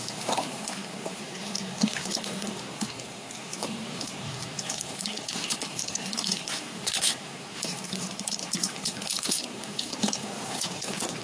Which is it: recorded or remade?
remade